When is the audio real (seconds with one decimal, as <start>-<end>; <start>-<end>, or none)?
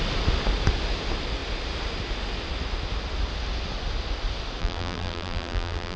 0.0-4.6